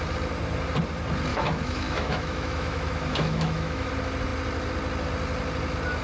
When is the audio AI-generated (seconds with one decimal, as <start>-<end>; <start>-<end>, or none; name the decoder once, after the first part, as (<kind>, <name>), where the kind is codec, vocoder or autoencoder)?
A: 1.3-3.9 (autoencoder, DAC-VAE)